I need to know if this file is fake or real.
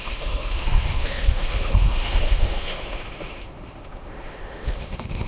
fake